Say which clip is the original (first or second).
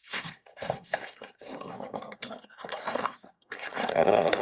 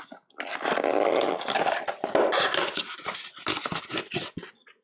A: second